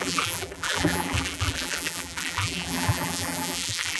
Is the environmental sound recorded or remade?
remade